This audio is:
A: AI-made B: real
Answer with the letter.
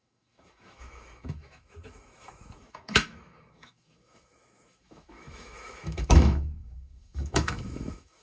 A